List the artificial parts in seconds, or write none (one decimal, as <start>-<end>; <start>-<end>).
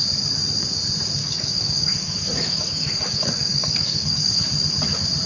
1.2-4.4